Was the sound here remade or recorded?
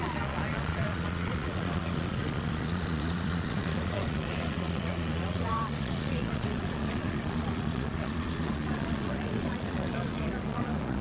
remade